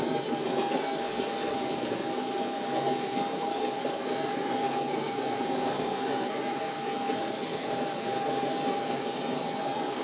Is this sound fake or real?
fake